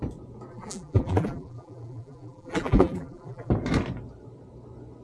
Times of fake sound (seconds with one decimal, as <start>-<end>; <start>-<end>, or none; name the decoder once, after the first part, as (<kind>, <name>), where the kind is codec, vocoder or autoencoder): 0.5-3.5 (vocoder, BigVGAN v2)